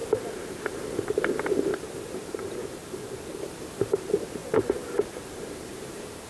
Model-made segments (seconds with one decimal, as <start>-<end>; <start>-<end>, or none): 1.1-6.3